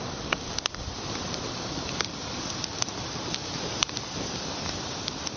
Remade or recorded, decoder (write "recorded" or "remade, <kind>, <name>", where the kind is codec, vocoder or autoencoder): remade, vocoder, BigVGAN v2